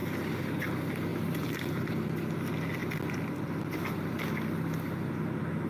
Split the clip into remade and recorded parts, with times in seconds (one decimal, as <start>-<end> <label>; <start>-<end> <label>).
0.0-1.1 recorded; 1.1-2.1 remade; 2.1-5.7 recorded